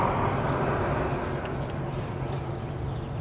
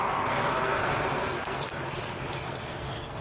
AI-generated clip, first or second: second